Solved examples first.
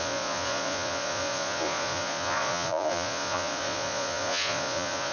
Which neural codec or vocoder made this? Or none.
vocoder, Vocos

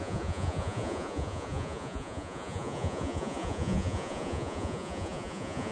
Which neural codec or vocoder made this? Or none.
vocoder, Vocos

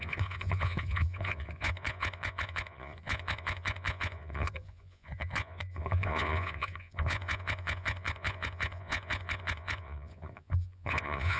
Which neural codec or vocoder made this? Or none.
vocoder, Vocos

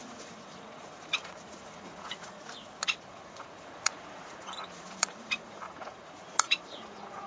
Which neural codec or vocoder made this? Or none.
vocoder, Vocos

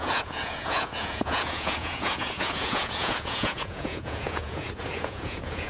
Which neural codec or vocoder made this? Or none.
vocoder, Vocos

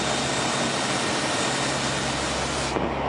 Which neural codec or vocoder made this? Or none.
none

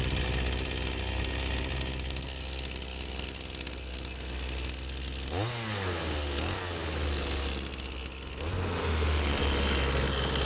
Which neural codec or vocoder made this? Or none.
none